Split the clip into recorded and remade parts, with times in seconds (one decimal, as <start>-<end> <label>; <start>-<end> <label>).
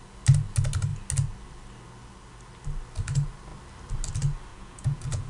0.0-4.5 recorded; 4.5-5.3 remade